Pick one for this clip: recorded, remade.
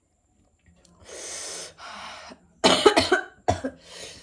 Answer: recorded